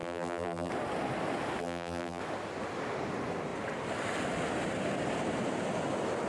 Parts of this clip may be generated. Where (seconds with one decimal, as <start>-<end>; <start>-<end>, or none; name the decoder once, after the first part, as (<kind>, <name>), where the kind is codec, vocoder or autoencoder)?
0.0-0.7 (vocoder, BigVGAN v2); 1.6-2.2